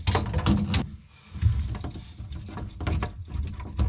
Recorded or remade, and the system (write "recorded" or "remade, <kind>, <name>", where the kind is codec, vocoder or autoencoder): recorded